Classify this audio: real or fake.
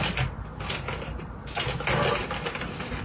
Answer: real